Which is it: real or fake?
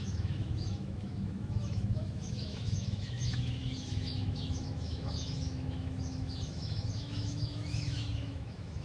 fake